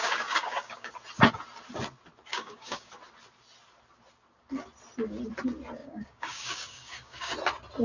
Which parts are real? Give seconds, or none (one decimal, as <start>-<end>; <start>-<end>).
0.9-2.3; 2.9-5.8; 7.3-7.8